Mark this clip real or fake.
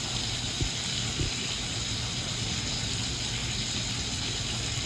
real